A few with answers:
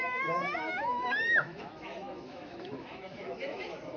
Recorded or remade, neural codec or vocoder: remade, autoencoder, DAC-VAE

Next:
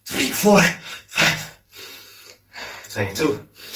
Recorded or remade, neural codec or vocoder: remade, codec, SNAC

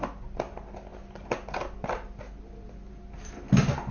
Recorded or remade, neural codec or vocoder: recorded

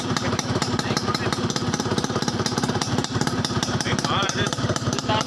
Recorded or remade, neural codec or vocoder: remade, vocoder, BigVGAN v2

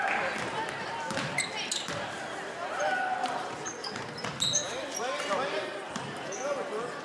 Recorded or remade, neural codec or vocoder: recorded